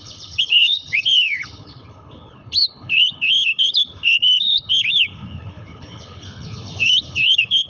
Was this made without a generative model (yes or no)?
no